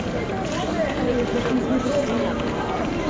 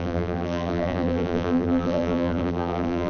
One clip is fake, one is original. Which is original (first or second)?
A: first